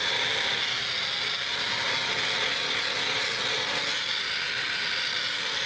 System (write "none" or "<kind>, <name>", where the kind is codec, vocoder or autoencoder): none